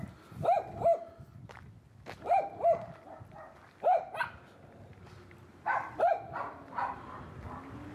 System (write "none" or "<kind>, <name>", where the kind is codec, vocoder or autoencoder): vocoder, BigVGAN v2